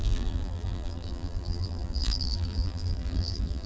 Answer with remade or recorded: remade